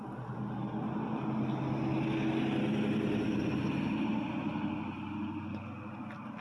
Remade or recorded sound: recorded